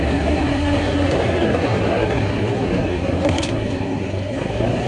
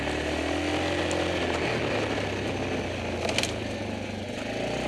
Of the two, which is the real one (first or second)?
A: second